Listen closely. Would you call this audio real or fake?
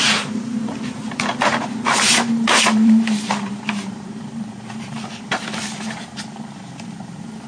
fake